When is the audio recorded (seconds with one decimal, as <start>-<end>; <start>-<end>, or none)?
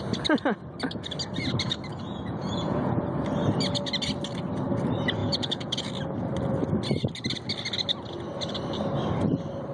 0.0-1.9; 3.0-5.2; 5.9-9.7